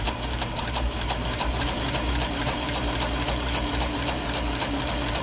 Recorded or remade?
remade